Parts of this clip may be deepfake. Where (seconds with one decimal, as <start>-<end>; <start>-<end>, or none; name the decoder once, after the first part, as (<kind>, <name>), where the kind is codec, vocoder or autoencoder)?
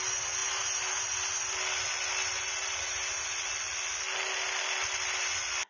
0.4-0.9 (vocoder, BigVGAN v2); 2.2-3.5